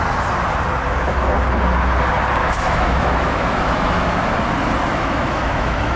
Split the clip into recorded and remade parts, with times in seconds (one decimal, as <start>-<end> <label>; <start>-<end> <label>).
0.0-2.4 recorded; 2.4-4.3 remade; 4.3-4.9 recorded; 4.9-6.0 remade